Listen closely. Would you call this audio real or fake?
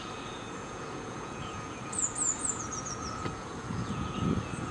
fake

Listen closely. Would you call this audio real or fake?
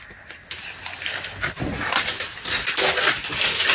real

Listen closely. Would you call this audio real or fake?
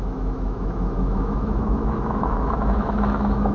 fake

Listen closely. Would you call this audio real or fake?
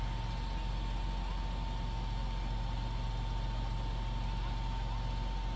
real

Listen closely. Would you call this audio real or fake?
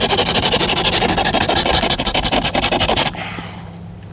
real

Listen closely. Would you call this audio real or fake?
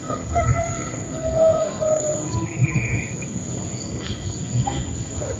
fake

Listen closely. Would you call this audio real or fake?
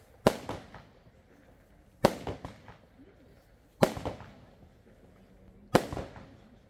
real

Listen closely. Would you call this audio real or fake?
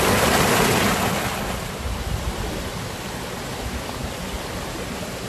real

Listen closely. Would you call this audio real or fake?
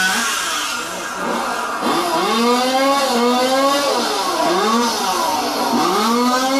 real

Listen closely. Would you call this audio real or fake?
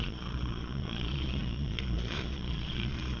fake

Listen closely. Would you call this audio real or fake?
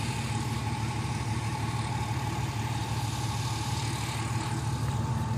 real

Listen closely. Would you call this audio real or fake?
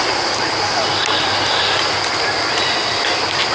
real